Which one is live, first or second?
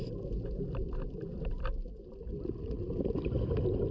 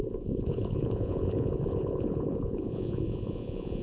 first